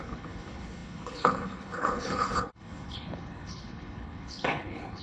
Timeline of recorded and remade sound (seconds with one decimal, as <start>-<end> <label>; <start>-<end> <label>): 0.0-5.0 remade